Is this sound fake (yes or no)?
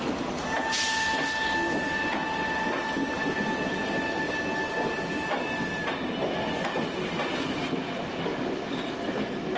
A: no